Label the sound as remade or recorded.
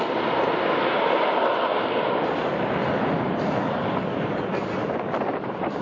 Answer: recorded